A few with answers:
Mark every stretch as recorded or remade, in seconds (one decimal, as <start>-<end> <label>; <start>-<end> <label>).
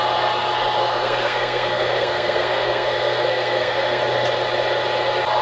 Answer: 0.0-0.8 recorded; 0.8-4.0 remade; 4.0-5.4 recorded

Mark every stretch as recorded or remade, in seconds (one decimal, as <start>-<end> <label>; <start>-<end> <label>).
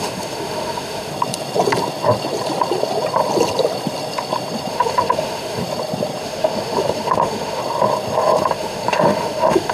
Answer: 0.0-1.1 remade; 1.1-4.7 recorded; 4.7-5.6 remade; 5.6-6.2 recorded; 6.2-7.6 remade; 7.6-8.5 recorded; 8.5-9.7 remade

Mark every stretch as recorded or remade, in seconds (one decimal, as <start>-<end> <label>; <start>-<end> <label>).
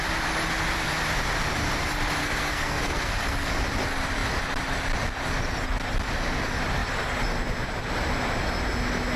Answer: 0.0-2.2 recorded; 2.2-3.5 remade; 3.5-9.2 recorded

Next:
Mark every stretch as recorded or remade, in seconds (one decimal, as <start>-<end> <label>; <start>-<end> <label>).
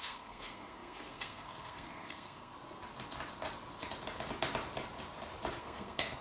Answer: 0.0-2.5 remade; 2.5-5.6 recorded; 5.6-6.2 remade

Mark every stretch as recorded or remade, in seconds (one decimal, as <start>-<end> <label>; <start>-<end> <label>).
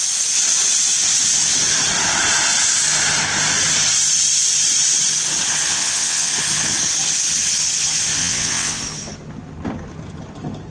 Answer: 0.0-5.7 recorded; 5.7-6.3 remade; 6.3-8.2 recorded; 8.2-8.8 remade; 8.8-10.7 recorded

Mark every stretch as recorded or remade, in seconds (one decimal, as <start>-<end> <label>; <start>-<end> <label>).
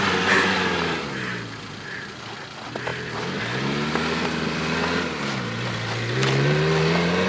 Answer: 0.0-7.3 recorded